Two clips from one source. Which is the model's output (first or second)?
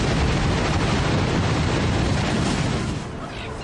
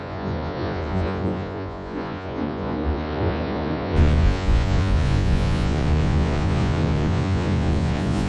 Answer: second